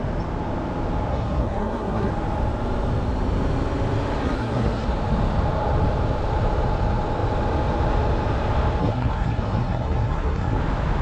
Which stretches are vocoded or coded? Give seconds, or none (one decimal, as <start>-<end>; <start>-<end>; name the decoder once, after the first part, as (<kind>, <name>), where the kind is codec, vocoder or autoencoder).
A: 1.1-2.1 (codec, SNAC); 4.2-4.9; 8.8-10.6